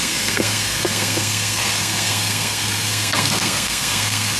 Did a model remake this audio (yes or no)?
yes